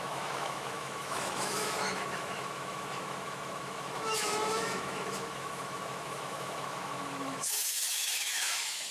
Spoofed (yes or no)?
yes